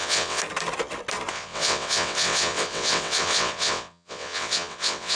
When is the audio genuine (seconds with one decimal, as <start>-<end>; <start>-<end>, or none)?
0.4-1.3